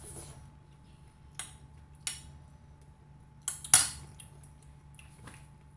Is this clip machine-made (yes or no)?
no